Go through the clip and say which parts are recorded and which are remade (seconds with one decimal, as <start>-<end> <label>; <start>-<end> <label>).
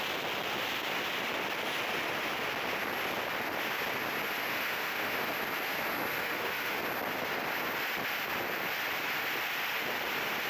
0.0-4.5 recorded; 4.5-5.3 remade; 5.3-6.2 recorded; 6.2-6.8 remade; 6.8-10.5 recorded